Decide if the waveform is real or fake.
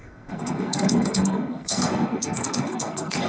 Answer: fake